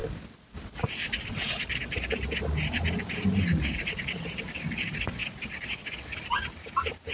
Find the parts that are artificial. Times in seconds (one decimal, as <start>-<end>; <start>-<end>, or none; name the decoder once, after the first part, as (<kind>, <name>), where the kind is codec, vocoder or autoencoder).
none